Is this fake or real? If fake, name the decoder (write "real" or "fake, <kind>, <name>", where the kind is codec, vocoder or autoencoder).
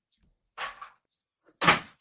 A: real